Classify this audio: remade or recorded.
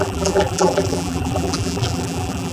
remade